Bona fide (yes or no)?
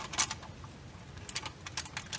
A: yes